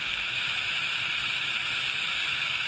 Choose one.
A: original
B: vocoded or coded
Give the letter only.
B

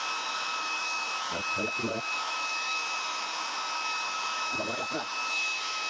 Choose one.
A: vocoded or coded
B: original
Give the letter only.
A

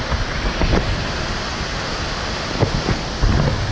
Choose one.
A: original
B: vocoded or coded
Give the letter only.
A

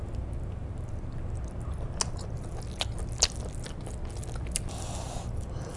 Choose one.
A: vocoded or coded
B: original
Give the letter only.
B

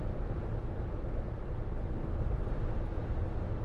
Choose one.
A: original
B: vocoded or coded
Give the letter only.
A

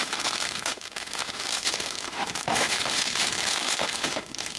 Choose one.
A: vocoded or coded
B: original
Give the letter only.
A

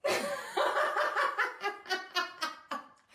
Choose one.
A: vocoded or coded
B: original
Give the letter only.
B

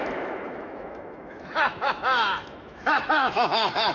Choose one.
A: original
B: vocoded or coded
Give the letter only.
B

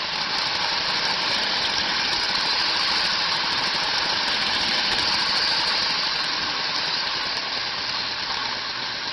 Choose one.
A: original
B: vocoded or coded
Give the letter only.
A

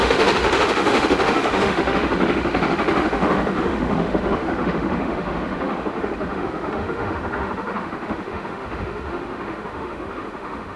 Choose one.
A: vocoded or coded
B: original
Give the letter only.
A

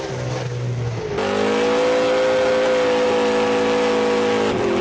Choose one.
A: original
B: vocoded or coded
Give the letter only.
A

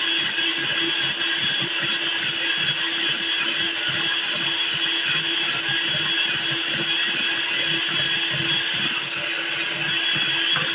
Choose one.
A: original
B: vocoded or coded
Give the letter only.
A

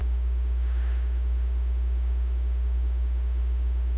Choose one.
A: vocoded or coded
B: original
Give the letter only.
A